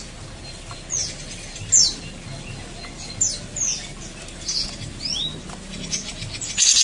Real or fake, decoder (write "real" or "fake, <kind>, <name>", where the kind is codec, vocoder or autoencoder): real